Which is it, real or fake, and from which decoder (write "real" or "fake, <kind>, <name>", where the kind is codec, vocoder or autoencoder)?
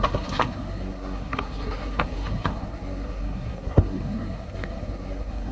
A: fake, codec, SNAC